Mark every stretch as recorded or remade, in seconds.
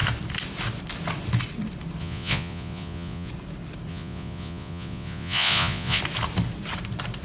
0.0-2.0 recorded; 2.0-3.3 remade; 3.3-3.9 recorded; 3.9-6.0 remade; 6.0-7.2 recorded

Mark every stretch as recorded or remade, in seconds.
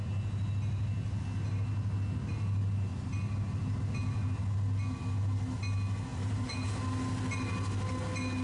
0.0-6.1 recorded; 6.1-6.7 remade; 6.7-8.4 recorded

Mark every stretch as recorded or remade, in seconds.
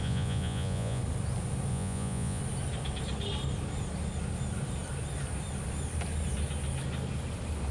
0.0-1.0 remade; 1.0-1.7 recorded; 1.7-2.4 remade; 2.4-7.7 recorded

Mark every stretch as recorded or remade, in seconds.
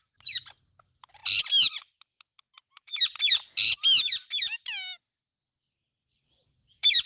0.0-7.1 recorded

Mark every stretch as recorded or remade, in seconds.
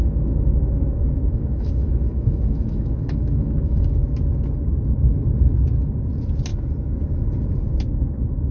0.0-4.0 remade; 4.0-8.5 recorded